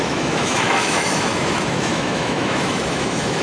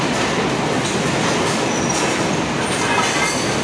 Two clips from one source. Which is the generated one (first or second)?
first